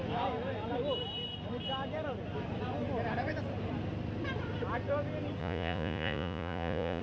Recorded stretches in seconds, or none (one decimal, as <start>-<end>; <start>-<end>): 0.0-5.4